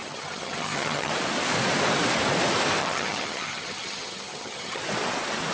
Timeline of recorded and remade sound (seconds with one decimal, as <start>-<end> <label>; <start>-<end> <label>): 0.0-1.1 remade; 1.1-2.8 recorded; 2.8-4.8 remade; 4.8-5.5 recorded